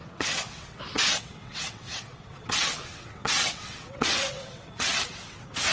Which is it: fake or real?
fake